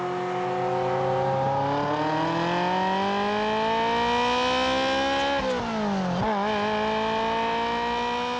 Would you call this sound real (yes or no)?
yes